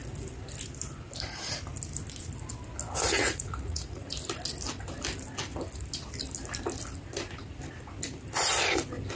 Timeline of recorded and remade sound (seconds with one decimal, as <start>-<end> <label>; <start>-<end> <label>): 0.0-3.2 recorded; 3.2-4.1 remade; 4.1-9.2 recorded